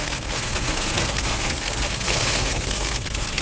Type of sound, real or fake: fake